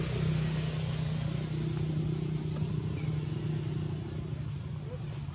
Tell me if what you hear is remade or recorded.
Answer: recorded